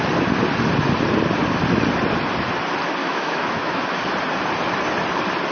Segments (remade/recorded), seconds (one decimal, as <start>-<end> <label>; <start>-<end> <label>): 0.0-3.0 recorded; 3.0-4.0 remade; 4.0-5.5 recorded